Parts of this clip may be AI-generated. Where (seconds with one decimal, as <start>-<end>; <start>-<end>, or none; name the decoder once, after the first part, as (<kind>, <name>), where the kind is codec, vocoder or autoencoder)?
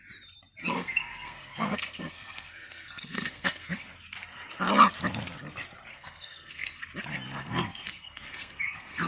0.6-3.9 (codec, SNAC); 5.9-6.8; 7.4-9.1